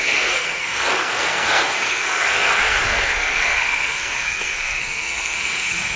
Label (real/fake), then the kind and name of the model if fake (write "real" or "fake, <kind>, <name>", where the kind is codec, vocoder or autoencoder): fake, codec, SNAC